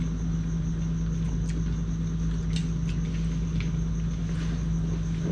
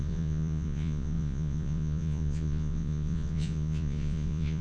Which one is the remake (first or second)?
second